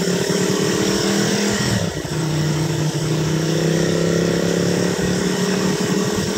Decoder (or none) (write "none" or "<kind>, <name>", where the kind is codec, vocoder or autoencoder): codec, DAC